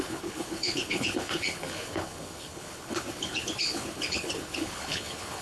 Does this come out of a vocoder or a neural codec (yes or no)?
yes